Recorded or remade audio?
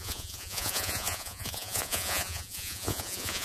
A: remade